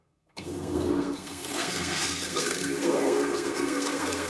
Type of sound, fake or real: fake